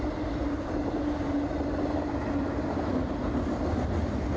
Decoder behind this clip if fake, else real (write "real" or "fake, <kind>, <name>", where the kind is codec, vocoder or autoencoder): real